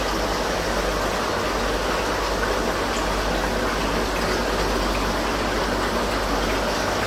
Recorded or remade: recorded